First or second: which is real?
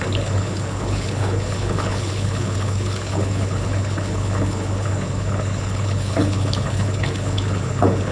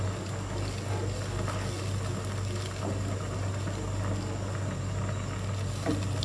second